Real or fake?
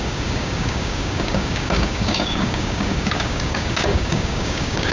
fake